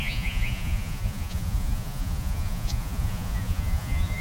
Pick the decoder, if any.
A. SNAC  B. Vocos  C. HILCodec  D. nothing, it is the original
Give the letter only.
B